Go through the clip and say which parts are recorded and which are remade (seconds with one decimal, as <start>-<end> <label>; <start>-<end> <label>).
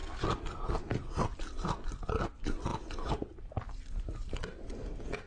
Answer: 0.0-5.3 recorded